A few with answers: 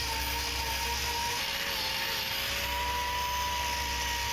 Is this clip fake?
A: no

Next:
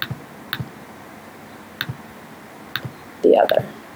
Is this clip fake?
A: no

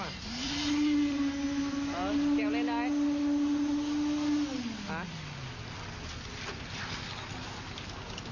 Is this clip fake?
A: no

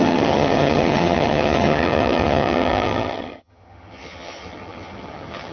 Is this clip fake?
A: yes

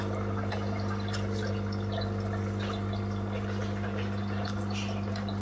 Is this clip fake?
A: no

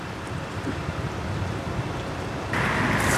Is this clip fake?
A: no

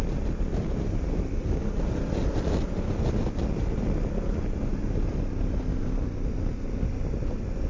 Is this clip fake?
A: no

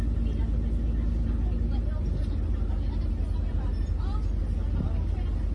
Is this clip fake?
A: no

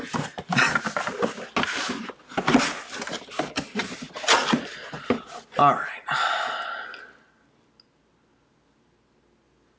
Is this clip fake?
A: no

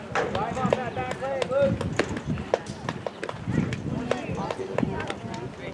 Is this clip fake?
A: no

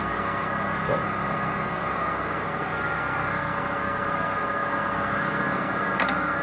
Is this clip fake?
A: yes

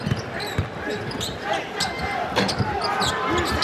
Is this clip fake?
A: no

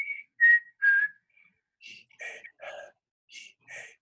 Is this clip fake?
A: no